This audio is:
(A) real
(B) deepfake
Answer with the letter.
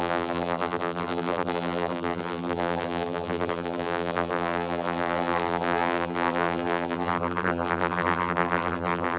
B